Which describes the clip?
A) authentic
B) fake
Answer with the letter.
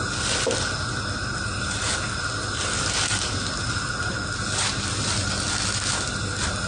A